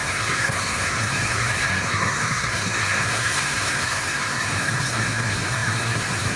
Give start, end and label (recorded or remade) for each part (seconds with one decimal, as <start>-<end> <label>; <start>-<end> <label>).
0.0-6.4 remade